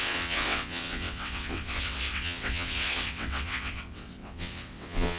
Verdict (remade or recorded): remade